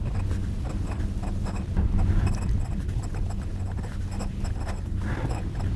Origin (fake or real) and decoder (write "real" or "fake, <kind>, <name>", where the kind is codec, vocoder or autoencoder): real